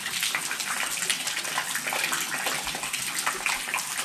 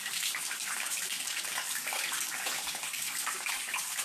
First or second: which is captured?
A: first